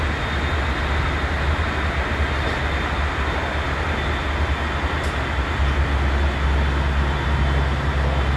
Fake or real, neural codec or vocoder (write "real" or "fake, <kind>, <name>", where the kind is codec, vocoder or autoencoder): real